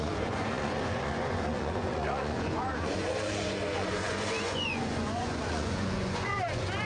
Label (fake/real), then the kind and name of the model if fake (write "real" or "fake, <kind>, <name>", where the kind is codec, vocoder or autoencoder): fake, vocoder, Vocos